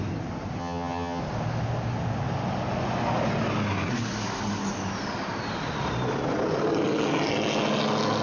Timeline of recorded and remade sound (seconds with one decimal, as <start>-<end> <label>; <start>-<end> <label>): 0.0-0.6 recorded; 0.6-1.2 remade; 1.2-8.2 recorded